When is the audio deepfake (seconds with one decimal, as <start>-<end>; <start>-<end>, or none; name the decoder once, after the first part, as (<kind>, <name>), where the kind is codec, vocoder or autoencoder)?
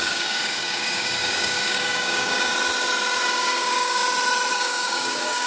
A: 0.0-2.5 (codec, DAC); 3.2-4.0; 4.5-5.5